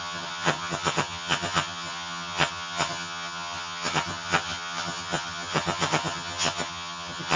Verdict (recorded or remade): remade